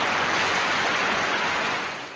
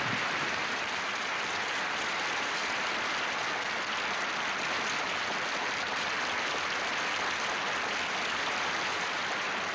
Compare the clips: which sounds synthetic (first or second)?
first